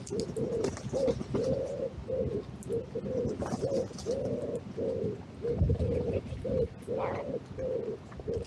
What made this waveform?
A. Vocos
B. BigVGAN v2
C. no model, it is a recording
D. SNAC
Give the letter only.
C